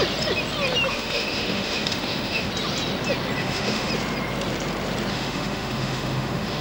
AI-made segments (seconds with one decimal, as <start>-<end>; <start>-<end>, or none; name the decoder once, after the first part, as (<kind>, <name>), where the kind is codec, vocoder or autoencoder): 0.9-2.5 (autoencoder, DAC-VAE); 3.4-3.9; 5.1-6.6